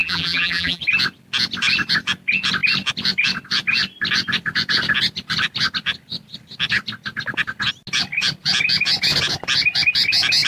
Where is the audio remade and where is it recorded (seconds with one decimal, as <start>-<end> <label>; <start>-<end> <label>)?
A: 0.0-0.8 remade; 0.8-10.5 recorded